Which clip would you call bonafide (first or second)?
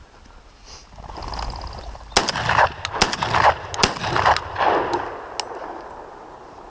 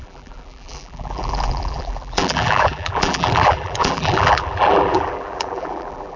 first